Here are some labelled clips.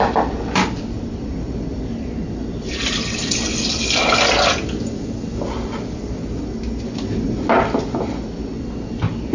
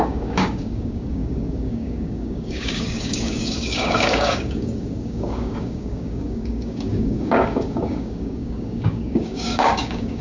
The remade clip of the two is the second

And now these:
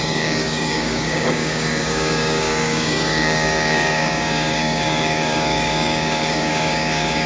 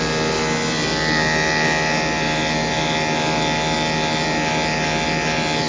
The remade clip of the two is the first